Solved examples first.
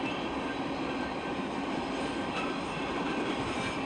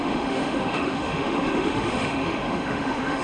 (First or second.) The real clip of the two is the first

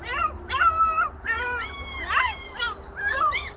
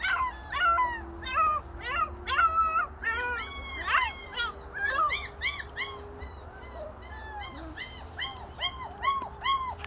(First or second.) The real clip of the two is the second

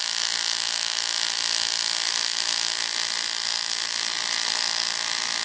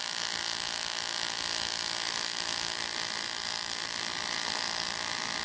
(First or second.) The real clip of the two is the first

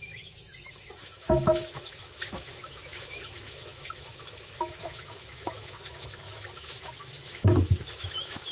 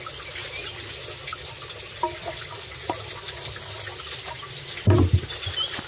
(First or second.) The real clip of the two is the second